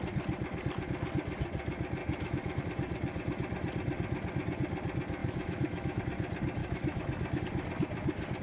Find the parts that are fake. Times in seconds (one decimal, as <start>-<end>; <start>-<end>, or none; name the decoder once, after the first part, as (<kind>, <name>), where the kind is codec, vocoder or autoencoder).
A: 2.0-2.6 (autoencoder, DAC-VAE); 5.2-6.0; 6.6-7.4